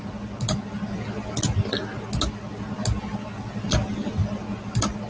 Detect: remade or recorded recorded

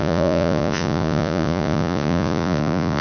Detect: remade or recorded remade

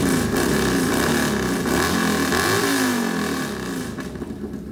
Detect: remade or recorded recorded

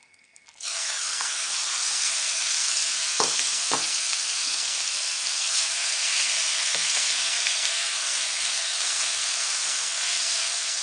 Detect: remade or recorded remade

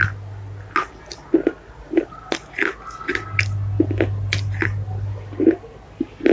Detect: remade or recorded recorded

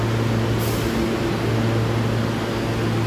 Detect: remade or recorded recorded